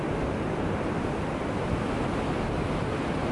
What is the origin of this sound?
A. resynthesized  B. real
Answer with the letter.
B